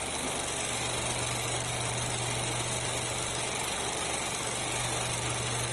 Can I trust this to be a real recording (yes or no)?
yes